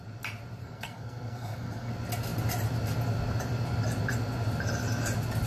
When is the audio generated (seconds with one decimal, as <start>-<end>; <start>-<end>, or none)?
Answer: 0.6-1.9

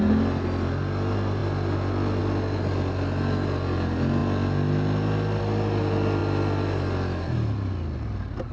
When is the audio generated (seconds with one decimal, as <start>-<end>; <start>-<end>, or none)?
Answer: none